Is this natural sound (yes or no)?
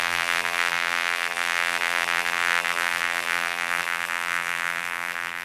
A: no